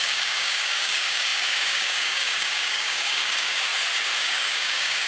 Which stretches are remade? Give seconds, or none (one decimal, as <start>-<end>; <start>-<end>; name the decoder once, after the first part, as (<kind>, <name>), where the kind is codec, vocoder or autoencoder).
0.0-3.7 (codec, DAC); 4.2-5.1